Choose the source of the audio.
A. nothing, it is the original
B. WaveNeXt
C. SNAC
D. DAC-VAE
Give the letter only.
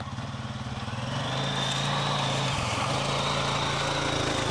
A